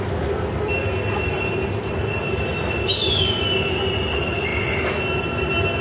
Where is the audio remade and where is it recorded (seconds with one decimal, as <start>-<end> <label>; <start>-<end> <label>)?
0.0-5.8 recorded